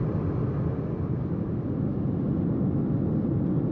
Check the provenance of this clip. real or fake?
real